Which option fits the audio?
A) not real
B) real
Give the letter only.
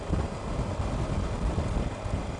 B